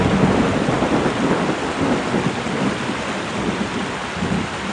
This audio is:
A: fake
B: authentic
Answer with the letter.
B